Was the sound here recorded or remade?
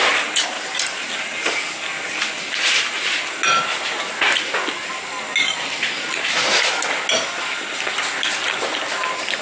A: recorded